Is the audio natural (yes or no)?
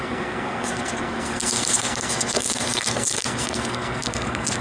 no